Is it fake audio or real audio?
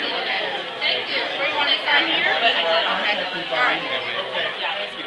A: real